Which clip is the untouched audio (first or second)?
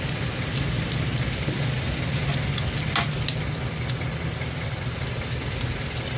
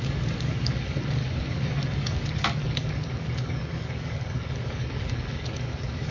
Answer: first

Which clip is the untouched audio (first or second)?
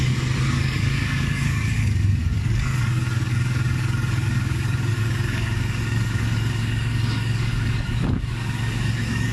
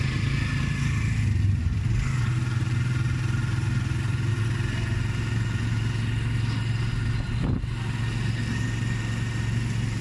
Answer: second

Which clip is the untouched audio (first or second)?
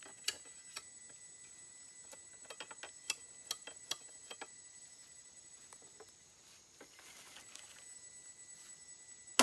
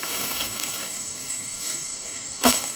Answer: first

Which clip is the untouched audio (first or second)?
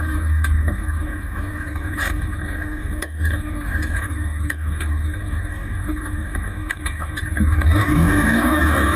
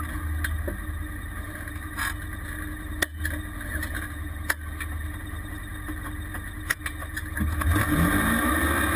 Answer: second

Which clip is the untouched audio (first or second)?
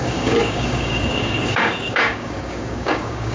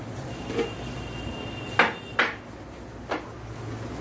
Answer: second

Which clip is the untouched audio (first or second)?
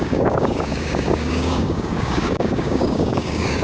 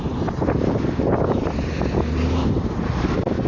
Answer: second